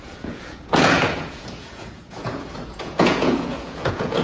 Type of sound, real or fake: fake